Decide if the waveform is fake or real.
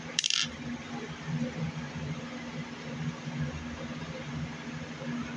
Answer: real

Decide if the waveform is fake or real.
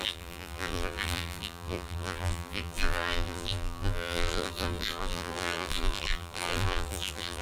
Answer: fake